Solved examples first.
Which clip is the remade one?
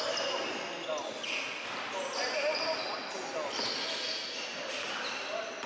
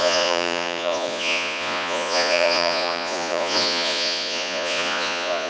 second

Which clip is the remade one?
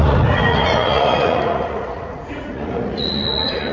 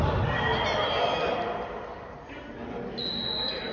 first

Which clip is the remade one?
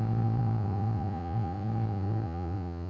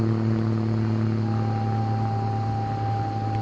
first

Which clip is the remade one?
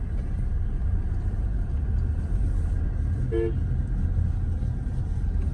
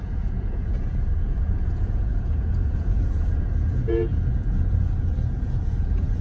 second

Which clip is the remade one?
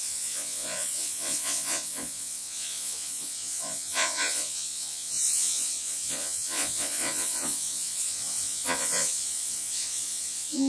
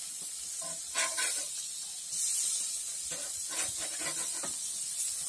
first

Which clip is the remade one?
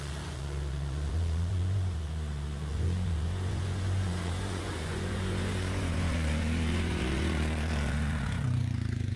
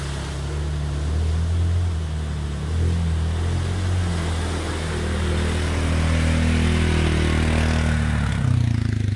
first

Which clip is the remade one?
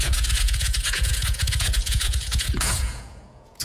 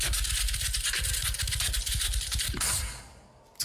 first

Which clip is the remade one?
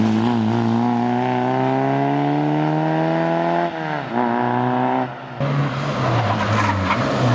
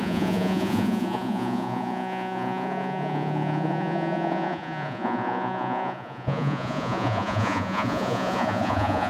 second